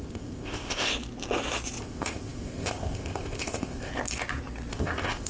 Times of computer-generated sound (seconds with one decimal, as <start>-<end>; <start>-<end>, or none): 0.0-0.9; 1.8-3.9; 4.7-5.3